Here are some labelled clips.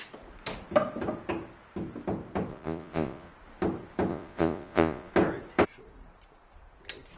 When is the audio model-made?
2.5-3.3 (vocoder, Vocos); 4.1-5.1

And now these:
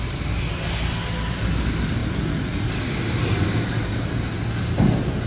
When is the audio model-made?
none

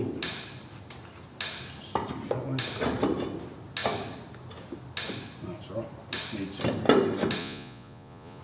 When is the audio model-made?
7.4-8.4 (vocoder, Vocos)

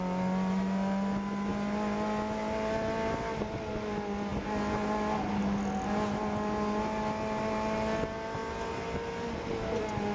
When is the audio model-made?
none